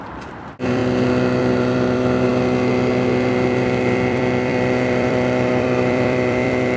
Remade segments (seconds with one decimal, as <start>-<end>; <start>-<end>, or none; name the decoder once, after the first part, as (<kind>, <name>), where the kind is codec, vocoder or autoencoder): 0.0-0.8 (vocoder, BigVGAN v2); 1.4-2.3; 3.3-6.8